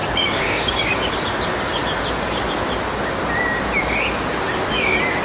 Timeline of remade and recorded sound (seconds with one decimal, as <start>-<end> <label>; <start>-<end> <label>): 0.0-1.1 remade; 1.1-5.2 recorded

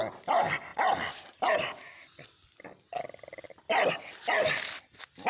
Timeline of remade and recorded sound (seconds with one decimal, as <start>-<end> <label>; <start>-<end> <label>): 0.0-5.3 recorded

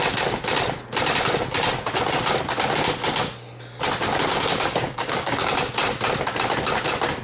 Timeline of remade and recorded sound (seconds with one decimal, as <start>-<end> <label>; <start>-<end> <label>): 0.0-4.3 recorded; 4.3-5.5 remade; 5.5-7.2 recorded

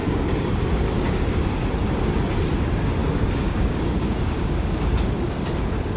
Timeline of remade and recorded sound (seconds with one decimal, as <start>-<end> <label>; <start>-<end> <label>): 0.0-1.5 remade; 1.5-3.0 recorded; 3.0-5.3 remade; 5.3-6.0 recorded

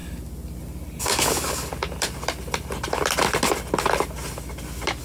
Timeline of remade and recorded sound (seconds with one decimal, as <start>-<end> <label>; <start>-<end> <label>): 0.0-1.0 recorded; 1.0-1.7 remade; 1.7-5.0 recorded

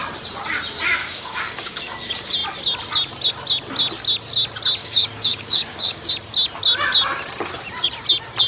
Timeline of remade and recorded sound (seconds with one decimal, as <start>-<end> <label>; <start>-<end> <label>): 0.0-1.0 recorded; 1.0-1.8 remade; 1.8-4.8 recorded; 4.8-6.1 remade; 6.1-8.5 recorded

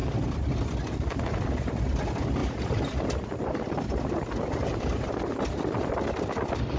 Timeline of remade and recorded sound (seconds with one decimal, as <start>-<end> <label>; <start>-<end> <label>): 0.0-6.8 recorded